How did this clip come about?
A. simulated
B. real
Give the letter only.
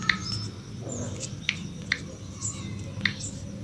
B